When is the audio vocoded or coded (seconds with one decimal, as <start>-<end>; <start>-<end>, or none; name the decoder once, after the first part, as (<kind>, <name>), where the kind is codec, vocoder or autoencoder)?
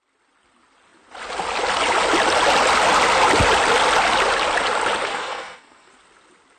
5.1-5.9 (codec, SNAC)